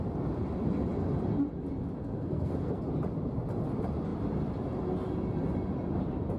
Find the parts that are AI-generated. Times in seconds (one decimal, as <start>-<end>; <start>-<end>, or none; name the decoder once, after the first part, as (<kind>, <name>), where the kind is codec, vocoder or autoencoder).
2.0-2.8 (codec, SNAC)